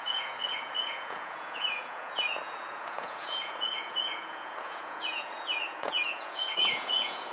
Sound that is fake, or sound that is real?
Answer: fake